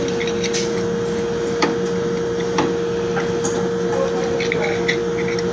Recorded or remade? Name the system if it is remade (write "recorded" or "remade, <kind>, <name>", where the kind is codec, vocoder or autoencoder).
recorded